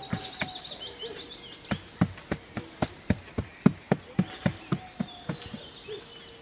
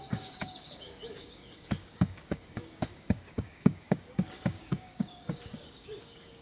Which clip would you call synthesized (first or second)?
second